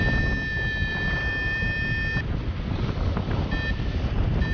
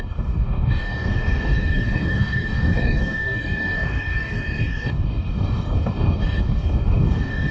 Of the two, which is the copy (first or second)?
second